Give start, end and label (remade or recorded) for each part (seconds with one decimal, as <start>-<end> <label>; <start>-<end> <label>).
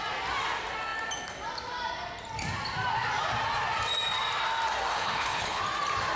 0.0-4.9 recorded; 4.9-5.6 remade; 5.6-6.2 recorded